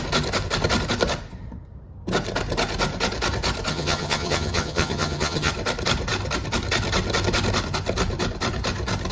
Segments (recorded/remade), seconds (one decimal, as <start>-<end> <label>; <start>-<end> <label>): 0.0-3.7 recorded; 3.7-5.5 remade; 5.5-9.1 recorded